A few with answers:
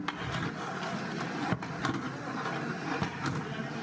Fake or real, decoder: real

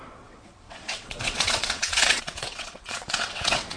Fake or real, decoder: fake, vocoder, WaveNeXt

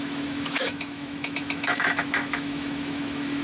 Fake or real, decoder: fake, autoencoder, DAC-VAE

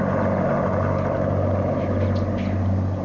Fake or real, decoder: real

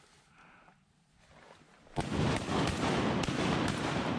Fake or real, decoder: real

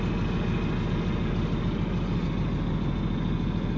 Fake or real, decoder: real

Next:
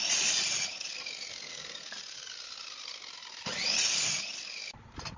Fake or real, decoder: real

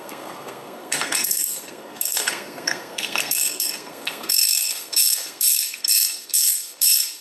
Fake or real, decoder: fake, codec, SNAC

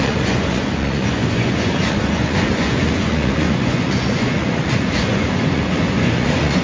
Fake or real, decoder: fake, vocoder, Vocos